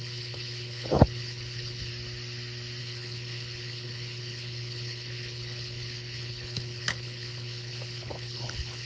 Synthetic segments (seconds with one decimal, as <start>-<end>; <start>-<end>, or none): 0.0-1.9; 2.8-8.8